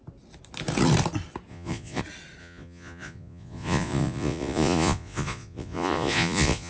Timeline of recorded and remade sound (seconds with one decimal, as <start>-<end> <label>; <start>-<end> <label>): 0.0-1.5 recorded; 1.5-2.0 remade; 2.0-2.4 recorded; 2.4-6.7 remade